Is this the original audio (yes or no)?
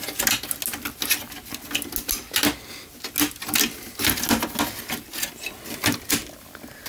yes